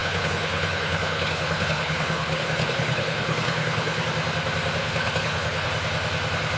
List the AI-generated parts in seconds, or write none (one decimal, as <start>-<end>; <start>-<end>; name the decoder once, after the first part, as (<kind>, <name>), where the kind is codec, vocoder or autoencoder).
0.0-4.0 (codec, HILCodec); 4.8-5.7